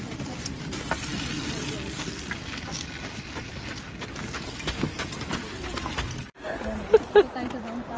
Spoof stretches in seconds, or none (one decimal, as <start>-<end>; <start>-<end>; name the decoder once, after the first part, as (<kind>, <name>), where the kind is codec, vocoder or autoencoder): none